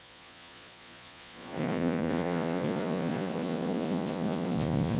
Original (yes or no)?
no